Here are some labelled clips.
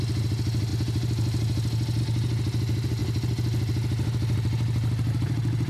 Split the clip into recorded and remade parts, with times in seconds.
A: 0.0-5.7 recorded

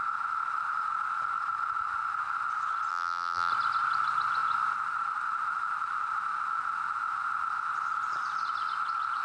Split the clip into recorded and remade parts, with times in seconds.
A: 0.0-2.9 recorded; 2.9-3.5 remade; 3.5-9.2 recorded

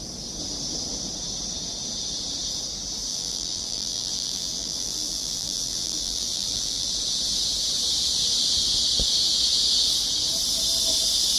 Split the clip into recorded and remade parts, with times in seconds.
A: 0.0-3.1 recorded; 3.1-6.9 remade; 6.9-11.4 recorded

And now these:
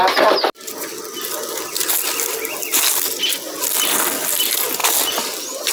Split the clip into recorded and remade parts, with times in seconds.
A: 0.0-5.7 recorded

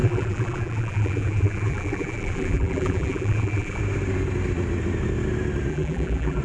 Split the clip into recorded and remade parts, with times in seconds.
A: 0.0-3.8 remade; 3.8-5.7 recorded; 5.7-6.4 remade

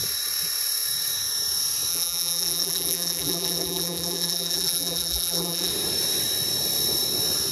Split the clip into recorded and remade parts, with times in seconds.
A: 0.0-1.9 recorded; 1.9-5.7 remade; 5.7-7.5 recorded

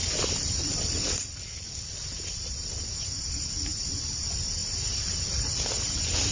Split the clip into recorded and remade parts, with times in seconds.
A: 0.0-6.3 recorded